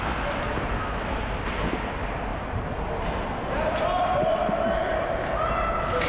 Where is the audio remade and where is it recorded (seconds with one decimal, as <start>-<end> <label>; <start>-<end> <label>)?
0.0-6.1 recorded